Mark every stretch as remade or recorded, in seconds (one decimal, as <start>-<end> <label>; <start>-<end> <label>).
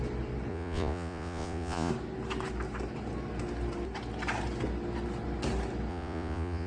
0.0-0.5 recorded; 0.5-1.9 remade; 1.9-5.9 recorded; 5.9-6.7 remade